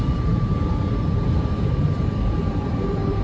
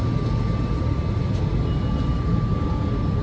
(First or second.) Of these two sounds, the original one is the second